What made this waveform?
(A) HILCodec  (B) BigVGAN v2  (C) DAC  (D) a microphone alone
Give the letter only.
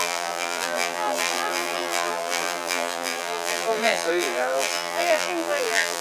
B